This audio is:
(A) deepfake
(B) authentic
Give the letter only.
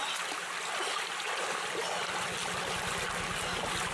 B